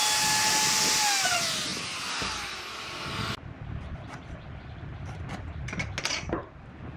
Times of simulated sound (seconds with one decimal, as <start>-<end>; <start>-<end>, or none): none